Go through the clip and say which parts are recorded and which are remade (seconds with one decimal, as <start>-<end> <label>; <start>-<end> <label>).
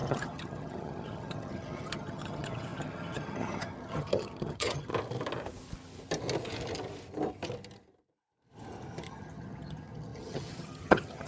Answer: 0.0-4.9 remade; 4.9-9.1 recorded; 9.1-11.3 remade